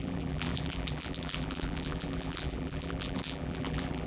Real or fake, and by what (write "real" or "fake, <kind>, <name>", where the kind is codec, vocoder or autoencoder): fake, vocoder, BigVGAN v2